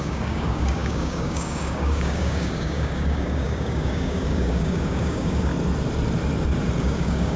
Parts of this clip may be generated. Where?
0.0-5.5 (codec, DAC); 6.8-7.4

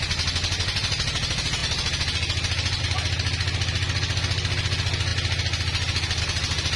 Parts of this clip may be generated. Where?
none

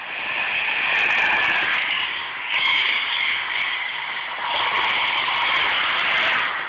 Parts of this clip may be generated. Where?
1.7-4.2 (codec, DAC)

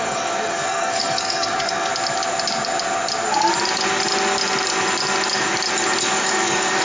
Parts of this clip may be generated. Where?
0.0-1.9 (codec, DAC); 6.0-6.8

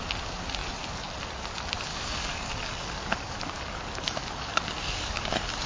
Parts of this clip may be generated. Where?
1.9-5.3 (codec, DAC)